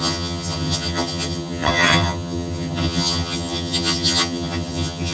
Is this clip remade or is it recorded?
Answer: remade